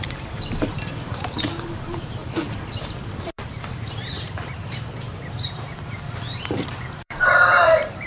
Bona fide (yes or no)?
no